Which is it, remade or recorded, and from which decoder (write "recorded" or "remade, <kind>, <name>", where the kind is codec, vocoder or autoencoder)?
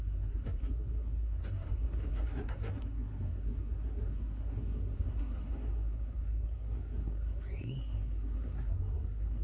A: remade, codec, SNAC